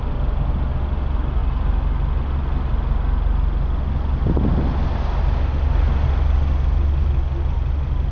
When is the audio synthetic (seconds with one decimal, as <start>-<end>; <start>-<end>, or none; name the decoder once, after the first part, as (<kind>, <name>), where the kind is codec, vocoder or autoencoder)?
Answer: none